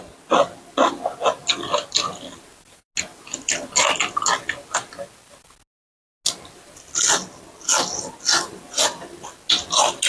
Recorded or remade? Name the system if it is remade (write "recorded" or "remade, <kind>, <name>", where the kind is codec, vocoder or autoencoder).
recorded